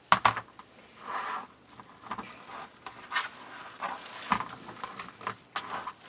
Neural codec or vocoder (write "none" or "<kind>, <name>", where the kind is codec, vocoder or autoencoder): none